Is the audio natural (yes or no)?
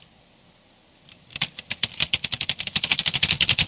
yes